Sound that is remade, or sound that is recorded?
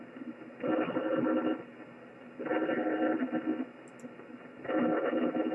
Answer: recorded